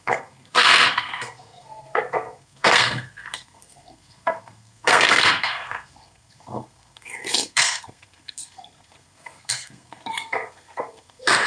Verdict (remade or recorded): remade